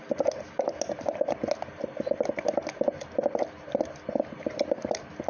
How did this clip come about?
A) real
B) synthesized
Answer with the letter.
A